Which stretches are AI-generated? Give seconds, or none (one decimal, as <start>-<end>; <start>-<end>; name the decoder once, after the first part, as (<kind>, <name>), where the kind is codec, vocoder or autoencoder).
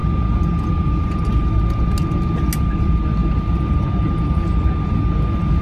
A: none